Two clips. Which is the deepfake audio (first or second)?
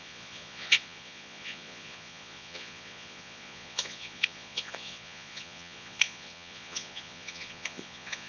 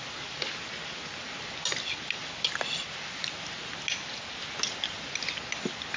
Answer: first